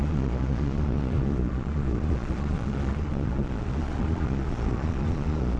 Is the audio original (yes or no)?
no